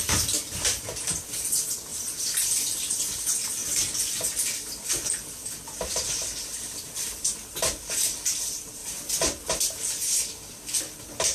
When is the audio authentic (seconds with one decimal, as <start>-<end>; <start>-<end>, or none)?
0.0-11.3